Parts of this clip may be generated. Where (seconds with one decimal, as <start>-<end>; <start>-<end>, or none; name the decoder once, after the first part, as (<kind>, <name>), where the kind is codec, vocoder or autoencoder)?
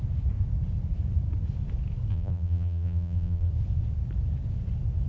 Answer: 2.1-3.5 (vocoder, BigVGAN v2)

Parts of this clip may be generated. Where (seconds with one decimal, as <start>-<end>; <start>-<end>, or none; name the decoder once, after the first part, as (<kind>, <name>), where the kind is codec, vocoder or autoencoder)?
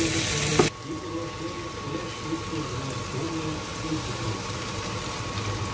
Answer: 3.7-5.0 (vocoder, BigVGAN v2)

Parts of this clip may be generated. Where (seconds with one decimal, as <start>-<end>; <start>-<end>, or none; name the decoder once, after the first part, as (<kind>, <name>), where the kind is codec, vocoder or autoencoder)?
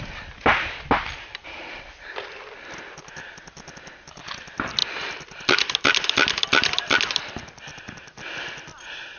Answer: none